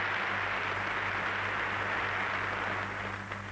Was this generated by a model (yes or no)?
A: no